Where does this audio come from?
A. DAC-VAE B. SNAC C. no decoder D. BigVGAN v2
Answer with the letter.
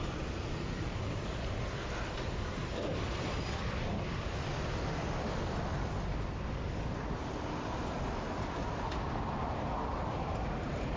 D